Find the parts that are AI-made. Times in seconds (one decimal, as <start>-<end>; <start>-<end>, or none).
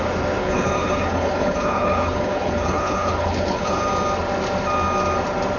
0.4-3.8